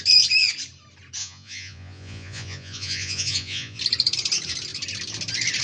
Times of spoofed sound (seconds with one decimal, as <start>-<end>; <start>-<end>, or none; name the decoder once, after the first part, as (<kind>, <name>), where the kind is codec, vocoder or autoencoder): 1.2-3.8 (vocoder, Vocos)